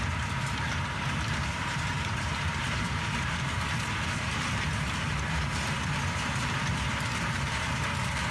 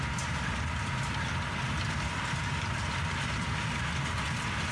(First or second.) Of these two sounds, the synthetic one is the first